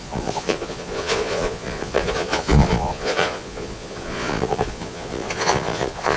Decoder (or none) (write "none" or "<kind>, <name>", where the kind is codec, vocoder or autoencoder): vocoder, Vocos